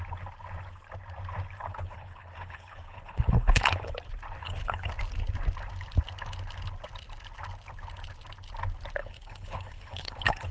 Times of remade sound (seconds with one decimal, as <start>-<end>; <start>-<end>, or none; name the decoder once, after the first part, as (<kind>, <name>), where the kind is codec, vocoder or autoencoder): 1.7-3.9 (codec, HILCodec); 4.4-4.9; 9.0-10.5